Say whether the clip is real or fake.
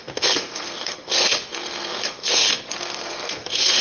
fake